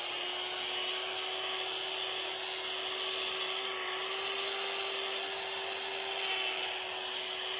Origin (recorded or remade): recorded